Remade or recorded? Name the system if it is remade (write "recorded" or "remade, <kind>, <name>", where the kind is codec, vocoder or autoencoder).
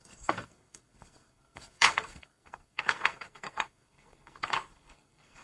remade, codec, SNAC